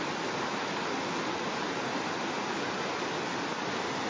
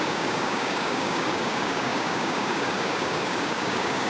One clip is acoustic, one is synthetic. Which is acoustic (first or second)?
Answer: first